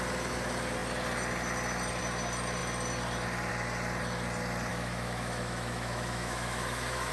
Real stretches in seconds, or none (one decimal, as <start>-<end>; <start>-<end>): 0.0-4.7

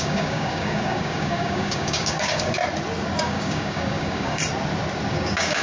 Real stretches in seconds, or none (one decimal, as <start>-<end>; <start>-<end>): 2.6-3.2; 4.4-5.1